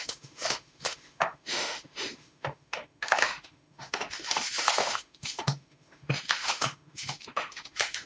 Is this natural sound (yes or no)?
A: no